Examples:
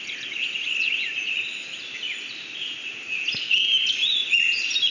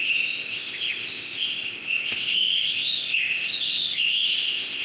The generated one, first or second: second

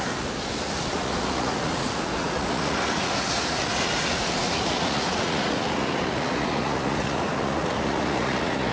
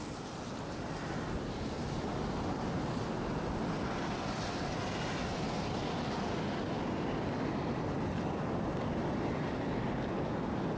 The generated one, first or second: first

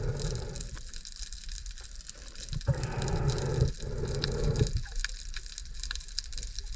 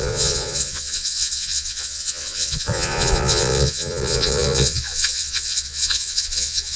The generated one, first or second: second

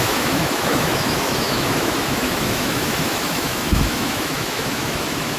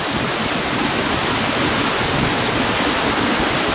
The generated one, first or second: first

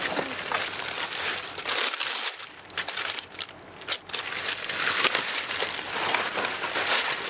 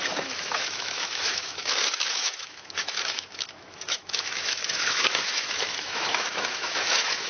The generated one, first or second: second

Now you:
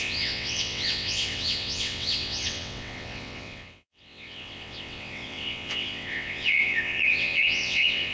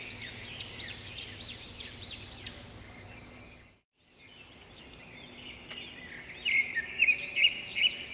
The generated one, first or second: first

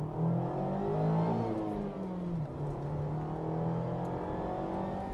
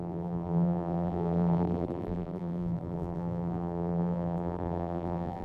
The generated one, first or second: second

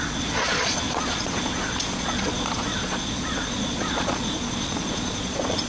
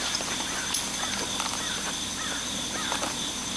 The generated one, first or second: first